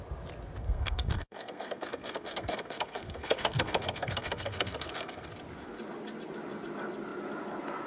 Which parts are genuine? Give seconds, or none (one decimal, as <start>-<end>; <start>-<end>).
0.0-0.6; 5.3-7.9